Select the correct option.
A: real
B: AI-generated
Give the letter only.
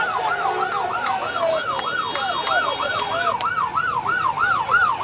A